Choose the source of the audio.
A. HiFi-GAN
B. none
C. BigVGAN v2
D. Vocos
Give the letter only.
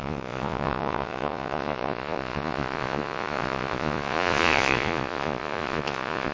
D